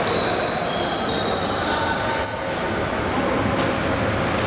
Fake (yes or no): no